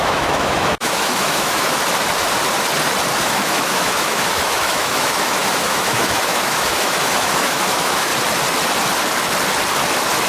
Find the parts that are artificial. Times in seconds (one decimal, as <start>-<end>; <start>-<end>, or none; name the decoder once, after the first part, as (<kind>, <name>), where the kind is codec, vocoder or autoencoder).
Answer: 0.0-1.8 (autoencoder, DAC-VAE); 3.2-8.1